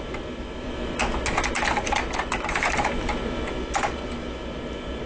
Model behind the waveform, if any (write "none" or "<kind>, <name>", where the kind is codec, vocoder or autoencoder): none